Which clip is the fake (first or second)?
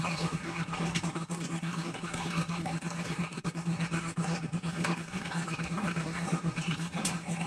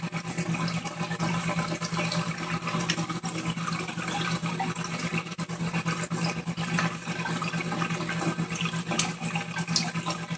first